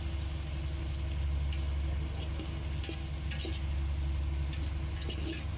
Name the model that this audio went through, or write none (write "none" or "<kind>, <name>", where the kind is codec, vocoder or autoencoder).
none